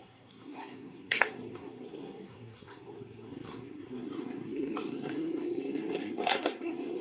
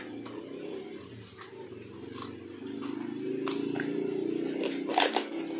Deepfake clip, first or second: first